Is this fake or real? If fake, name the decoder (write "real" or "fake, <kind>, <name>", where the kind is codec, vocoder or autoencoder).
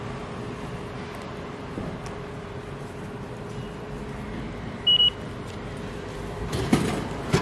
real